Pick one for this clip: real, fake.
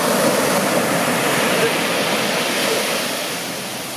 real